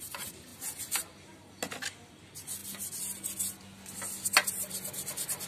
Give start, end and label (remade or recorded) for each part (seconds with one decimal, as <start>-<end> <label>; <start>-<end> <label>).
0.0-5.5 recorded